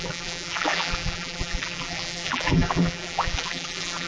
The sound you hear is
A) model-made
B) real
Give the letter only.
A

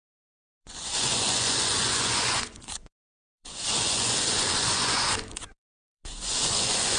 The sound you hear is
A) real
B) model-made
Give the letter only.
B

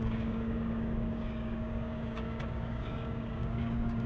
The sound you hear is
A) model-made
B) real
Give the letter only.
A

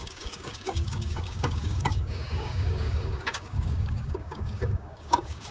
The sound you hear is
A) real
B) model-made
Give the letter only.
B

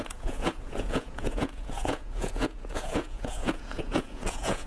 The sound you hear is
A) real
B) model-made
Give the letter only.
B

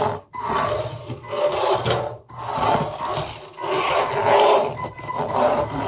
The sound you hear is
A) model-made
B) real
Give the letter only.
B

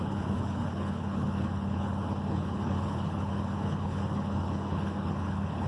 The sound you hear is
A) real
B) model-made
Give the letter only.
B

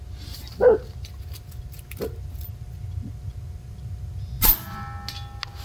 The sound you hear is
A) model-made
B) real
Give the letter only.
B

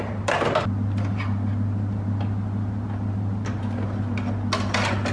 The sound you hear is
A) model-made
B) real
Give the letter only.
B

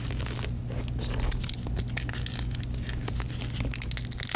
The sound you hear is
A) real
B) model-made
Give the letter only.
A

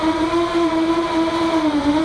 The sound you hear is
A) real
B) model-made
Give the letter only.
B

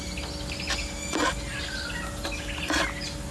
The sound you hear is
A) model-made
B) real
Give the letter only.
B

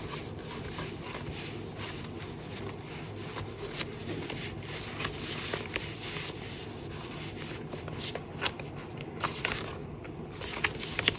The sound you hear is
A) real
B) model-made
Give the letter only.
A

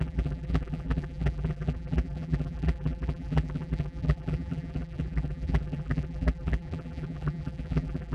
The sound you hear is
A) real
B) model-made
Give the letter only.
B